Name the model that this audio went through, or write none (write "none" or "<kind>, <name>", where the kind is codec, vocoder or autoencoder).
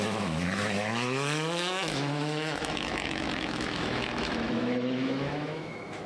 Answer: autoencoder, DAC-VAE